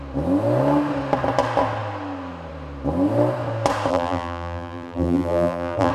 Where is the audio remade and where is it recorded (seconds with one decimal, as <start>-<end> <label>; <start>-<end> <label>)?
0.0-3.9 recorded; 3.9-5.9 remade